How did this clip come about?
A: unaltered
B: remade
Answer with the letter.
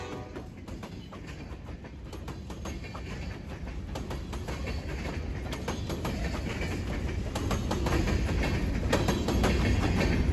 A